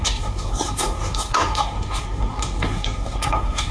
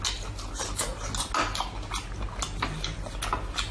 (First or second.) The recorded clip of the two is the second